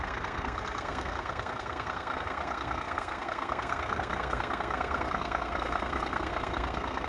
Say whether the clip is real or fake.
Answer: fake